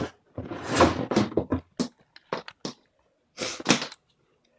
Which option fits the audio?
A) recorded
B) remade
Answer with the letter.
A